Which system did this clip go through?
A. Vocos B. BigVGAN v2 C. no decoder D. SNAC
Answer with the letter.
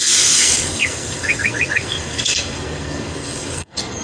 D